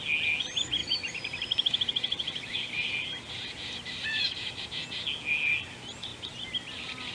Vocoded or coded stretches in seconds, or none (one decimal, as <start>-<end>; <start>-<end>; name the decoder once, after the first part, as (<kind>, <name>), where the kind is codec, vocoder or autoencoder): 0.8-4.6 (vocoder, BigVGAN v2)